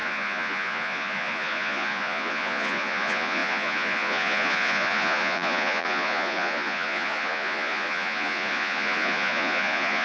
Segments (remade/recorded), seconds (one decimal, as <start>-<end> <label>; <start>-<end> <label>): 0.0-10.0 remade